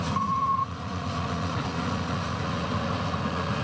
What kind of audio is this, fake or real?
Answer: fake